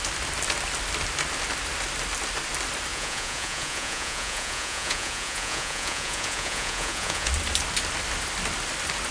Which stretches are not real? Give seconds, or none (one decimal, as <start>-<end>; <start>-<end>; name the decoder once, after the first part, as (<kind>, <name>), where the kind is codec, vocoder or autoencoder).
2.9-7.3 (vocoder, Vocos)